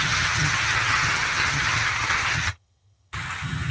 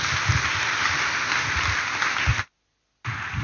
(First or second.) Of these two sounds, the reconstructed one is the first